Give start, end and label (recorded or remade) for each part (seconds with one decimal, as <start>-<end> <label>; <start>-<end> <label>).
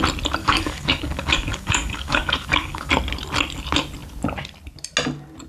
0.0-0.4 recorded; 0.4-2.9 remade; 2.9-5.5 recorded